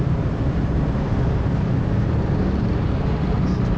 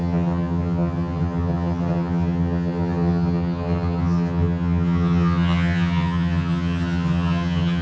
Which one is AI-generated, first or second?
second